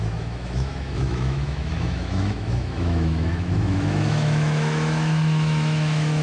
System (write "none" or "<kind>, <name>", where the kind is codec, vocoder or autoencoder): autoencoder, DAC-VAE